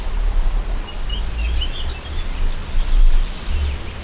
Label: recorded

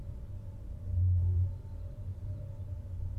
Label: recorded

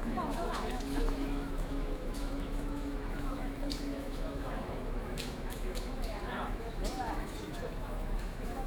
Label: remade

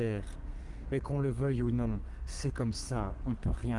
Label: remade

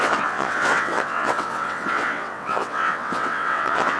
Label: remade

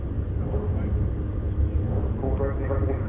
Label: recorded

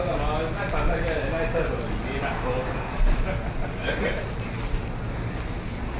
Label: recorded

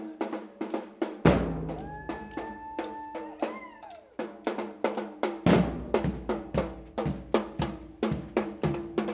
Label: recorded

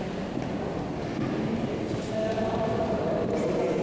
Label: recorded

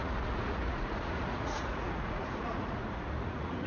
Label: remade